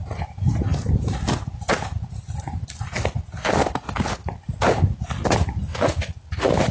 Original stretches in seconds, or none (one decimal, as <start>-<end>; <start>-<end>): 0.0-6.7

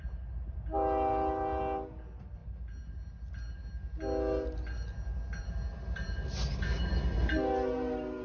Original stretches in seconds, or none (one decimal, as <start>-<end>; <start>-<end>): 0.0-8.2

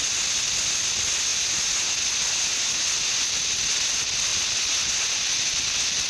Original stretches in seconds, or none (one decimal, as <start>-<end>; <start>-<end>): 0.0-6.1

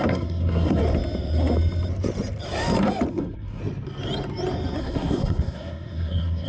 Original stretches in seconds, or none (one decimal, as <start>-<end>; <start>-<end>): 0.8-3.1; 3.6-4.8

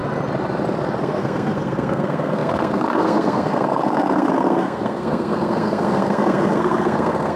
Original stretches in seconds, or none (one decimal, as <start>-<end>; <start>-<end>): 0.0-1.0